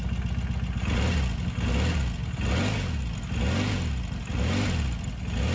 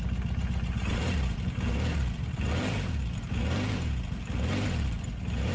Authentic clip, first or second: first